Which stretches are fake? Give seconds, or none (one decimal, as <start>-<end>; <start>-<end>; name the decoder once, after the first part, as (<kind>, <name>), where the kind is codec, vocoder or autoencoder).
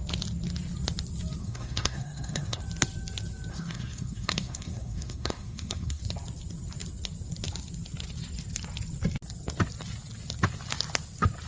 1.4-2.6 (codec, SNAC); 3.5-6.0